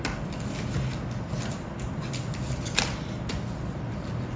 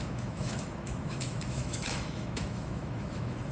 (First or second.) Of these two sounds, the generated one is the second